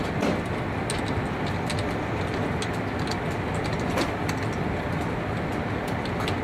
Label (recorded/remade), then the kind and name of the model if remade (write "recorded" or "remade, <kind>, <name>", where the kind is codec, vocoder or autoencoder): recorded